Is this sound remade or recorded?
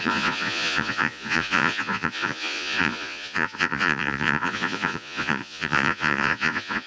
remade